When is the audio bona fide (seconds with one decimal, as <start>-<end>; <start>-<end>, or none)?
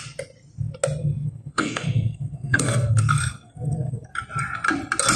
0.0-1.0; 4.1-5.2